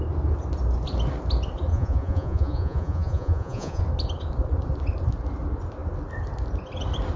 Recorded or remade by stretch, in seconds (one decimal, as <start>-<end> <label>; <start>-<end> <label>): 0.0-1.7 recorded; 1.7-3.8 remade; 3.8-7.2 recorded